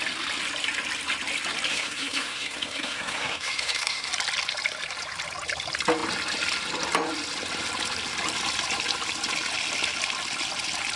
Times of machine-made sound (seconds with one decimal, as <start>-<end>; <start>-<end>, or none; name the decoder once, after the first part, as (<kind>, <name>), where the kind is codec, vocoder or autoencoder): 1.7-4.1 (codec, SNAC)